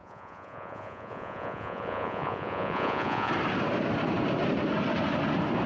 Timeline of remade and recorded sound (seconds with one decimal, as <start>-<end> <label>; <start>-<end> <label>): 0.0-3.3 remade; 3.3-5.7 recorded